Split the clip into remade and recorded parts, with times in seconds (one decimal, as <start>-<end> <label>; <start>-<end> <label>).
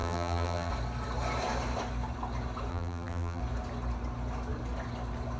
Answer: 0.0-0.7 remade; 0.7-2.7 recorded; 2.7-3.4 remade; 3.4-5.4 recorded